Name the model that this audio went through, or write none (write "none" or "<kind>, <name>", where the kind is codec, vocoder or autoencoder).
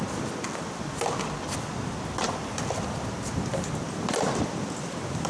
none